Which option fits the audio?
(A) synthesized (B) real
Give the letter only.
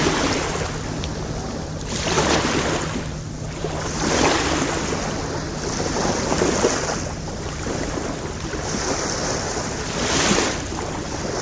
B